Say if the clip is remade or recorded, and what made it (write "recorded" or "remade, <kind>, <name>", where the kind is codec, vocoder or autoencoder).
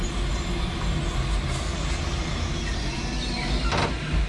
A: recorded